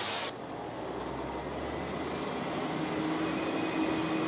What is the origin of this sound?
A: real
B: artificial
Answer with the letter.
A